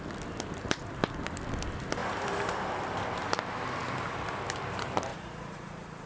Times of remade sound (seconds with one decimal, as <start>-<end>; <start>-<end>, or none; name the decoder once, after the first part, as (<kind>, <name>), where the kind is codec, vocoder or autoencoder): 5.1-6.1 (vocoder, Vocos)